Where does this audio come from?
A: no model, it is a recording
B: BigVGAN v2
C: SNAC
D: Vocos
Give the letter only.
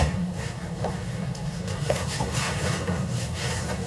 C